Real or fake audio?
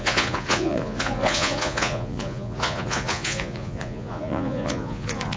fake